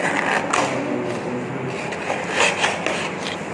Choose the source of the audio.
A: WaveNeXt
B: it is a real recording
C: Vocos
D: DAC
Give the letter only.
B